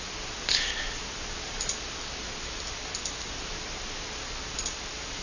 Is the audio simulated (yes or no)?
no